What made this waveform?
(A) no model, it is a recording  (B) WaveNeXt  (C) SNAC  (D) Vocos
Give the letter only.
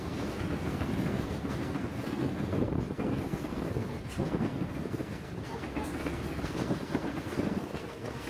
C